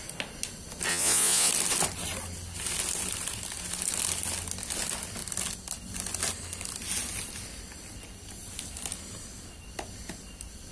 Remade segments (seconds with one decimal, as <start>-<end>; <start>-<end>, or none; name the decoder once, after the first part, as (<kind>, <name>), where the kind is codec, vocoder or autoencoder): 0.9-1.5 (vocoder, Vocos)